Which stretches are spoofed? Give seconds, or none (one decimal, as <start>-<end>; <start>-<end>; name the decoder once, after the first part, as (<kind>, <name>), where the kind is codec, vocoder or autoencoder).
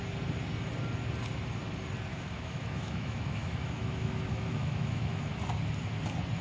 2.1-5.4 (autoencoder, DAC-VAE)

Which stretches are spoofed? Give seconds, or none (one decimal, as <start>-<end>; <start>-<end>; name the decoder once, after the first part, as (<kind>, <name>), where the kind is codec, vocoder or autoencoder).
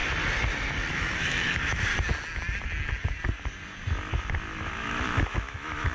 0.9-1.9 (autoencoder, DAC-VAE); 4.7-5.9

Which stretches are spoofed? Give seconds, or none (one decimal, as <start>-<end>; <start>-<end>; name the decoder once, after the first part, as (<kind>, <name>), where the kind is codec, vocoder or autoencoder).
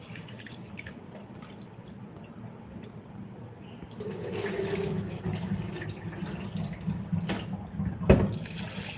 3.8-5.2 (autoencoder, DAC-VAE)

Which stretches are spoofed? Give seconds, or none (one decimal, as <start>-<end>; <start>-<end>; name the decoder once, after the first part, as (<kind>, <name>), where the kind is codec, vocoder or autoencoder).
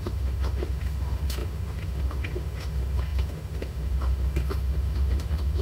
0.0-5.6 (autoencoder, DAC-VAE)